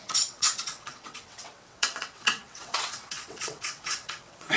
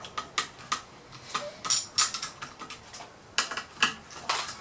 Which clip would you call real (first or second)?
second